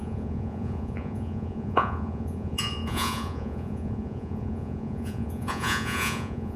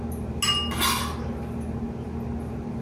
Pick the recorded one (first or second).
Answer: second